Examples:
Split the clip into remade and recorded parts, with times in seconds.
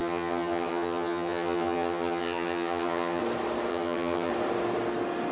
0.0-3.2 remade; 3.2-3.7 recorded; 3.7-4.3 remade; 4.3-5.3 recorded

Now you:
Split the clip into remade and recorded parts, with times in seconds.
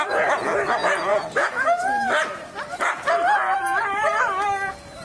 0.0-1.1 recorded; 1.1-4.1 remade; 4.1-5.0 recorded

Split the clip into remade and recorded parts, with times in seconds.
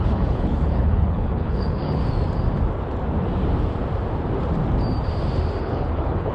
0.0-2.0 remade; 2.0-5.6 recorded; 5.6-6.3 remade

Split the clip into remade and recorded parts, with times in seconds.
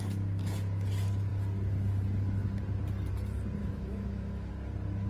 0.0-3.6 recorded; 3.6-4.5 remade; 4.5-5.1 recorded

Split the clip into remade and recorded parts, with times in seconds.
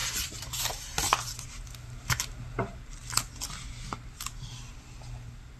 0.0-0.6 remade; 0.6-5.6 recorded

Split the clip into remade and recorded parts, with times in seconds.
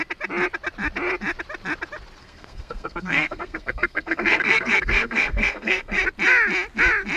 0.0-2.2 recorded; 2.2-6.0 remade; 6.0-7.2 recorded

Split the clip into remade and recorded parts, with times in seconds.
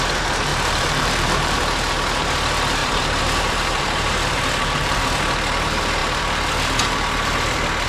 0.0-0.5 recorded; 0.5-1.6 remade; 1.6-2.8 recorded; 2.8-5.0 remade; 5.0-7.9 recorded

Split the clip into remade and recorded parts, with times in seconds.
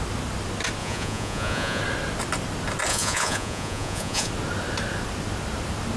0.0-0.8 recorded; 0.8-1.8 remade; 1.8-2.9 recorded; 2.9-4.3 remade; 4.3-6.0 recorded